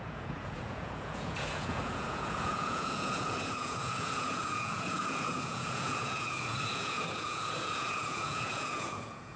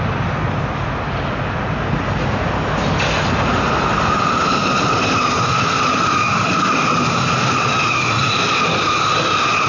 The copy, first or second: first